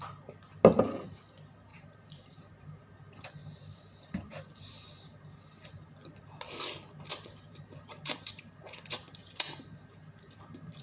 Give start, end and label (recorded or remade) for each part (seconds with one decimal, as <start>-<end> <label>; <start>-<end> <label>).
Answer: 0.0-1.7 recorded; 1.7-2.8 remade; 2.8-3.4 recorded; 3.4-5.6 remade; 5.6-7.1 recorded; 7.1-8.6 remade; 8.6-9.2 recorded; 9.2-10.8 remade